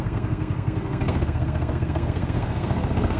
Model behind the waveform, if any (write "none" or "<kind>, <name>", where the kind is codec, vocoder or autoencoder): codec, SNAC